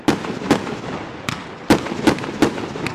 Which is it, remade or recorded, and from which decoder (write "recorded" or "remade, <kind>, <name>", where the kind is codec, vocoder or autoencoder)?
remade, vocoder, BigVGAN v2